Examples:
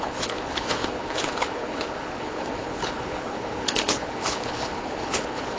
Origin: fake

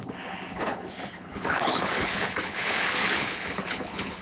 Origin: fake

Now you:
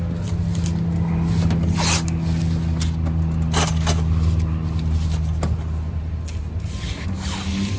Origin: real